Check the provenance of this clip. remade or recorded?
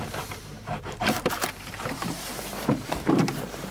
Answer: remade